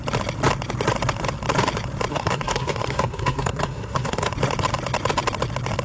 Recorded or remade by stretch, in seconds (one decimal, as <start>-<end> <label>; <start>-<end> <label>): 0.0-2.1 recorded; 2.1-4.3 remade; 4.3-5.8 recorded